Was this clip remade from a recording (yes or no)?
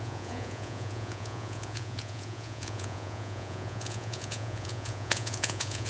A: yes